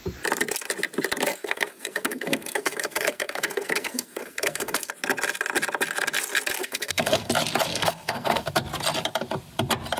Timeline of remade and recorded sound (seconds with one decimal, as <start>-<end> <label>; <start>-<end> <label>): 0.0-1.3 recorded; 1.3-4.9 remade; 4.9-6.6 recorded; 6.6-7.3 remade; 7.3-7.7 recorded; 7.7-8.5 remade; 8.5-10.0 recorded